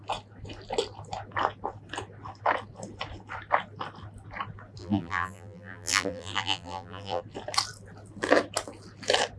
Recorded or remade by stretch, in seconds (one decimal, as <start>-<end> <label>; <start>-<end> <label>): 0.0-4.8 recorded; 4.8-7.2 remade; 7.2-9.4 recorded